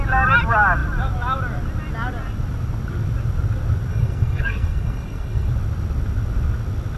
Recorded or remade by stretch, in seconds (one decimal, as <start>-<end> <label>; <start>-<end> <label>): 0.0-3.9 recorded; 3.9-5.5 remade; 5.5-7.0 recorded